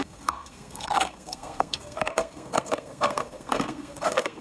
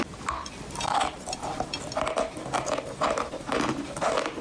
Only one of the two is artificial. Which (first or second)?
first